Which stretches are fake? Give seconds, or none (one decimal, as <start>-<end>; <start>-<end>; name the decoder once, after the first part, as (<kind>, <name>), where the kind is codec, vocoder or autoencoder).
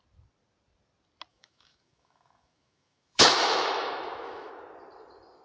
1.3-4.5 (autoencoder, DAC-VAE)